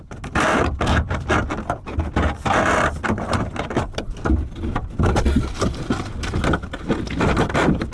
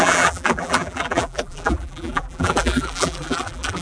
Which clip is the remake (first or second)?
second